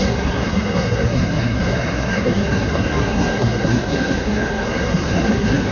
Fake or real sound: fake